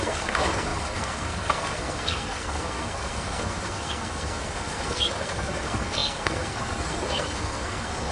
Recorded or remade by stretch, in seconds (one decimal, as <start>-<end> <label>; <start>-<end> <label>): 0.0-8.1 remade